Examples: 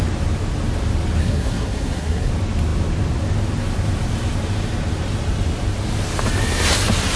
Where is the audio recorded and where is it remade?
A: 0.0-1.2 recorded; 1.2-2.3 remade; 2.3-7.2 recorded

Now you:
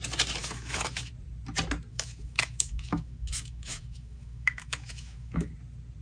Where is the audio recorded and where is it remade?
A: 0.0-0.4 recorded; 0.4-1.1 remade; 1.1-1.9 recorded; 1.9-5.5 remade; 5.5-6.0 recorded

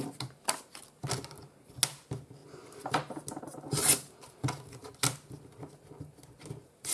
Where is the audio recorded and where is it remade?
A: 0.0-6.9 recorded

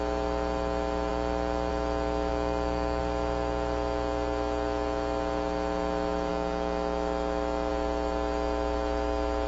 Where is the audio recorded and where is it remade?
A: 0.0-2.3 recorded; 2.3-3.0 remade; 3.0-6.3 recorded; 6.3-7.7 remade; 7.7-9.5 recorded

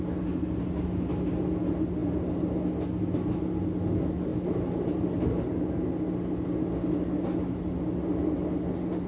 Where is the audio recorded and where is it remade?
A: 0.0-9.1 recorded